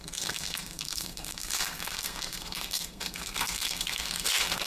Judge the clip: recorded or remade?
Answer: remade